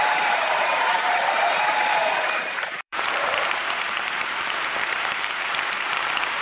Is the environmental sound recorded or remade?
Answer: remade